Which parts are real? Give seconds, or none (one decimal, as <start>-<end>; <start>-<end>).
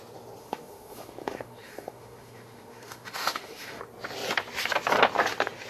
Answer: 0.0-0.4; 3.8-5.7